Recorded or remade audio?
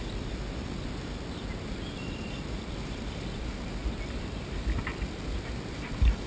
recorded